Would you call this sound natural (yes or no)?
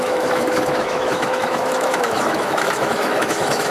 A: no